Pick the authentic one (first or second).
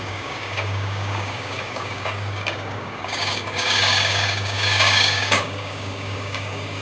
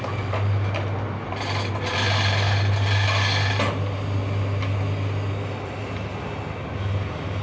second